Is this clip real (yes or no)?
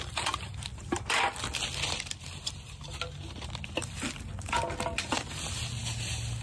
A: yes